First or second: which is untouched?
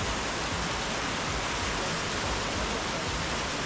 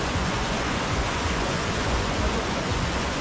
first